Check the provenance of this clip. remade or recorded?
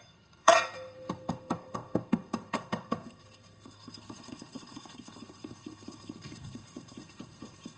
remade